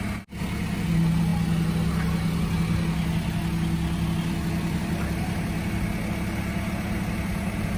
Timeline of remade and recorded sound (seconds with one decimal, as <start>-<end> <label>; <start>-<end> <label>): 0.0-7.8 recorded